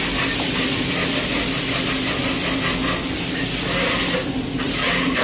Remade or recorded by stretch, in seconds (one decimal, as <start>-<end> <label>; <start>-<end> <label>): 0.0-5.2 recorded